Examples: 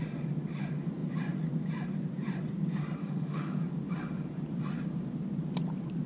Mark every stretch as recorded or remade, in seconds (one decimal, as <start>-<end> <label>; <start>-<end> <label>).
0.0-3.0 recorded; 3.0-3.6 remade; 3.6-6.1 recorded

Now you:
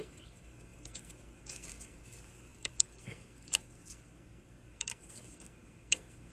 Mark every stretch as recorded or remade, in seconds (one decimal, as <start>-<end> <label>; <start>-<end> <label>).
0.0-6.3 remade

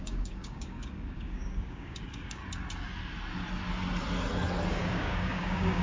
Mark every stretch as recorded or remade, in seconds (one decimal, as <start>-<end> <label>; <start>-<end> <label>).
0.0-2.4 remade; 2.4-4.7 recorded; 4.7-5.8 remade

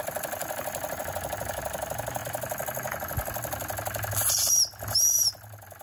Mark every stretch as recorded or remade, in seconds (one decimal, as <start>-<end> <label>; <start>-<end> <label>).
0.0-5.8 recorded

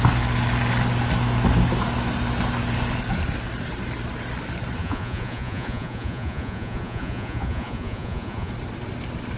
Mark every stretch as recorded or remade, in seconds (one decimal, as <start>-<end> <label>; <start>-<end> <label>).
0.0-4.8 recorded; 4.8-8.5 remade; 8.5-9.4 recorded

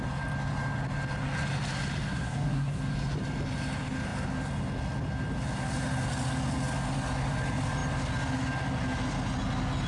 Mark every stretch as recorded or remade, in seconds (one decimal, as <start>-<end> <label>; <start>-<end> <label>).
0.0-2.1 recorded; 2.1-2.8 remade; 2.8-9.9 recorded

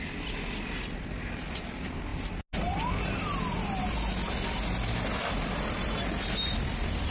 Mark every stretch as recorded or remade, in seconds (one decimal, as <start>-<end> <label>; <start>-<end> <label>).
0.0-7.1 recorded